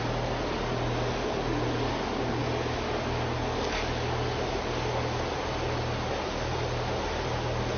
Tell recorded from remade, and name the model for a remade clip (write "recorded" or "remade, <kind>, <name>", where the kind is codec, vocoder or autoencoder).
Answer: recorded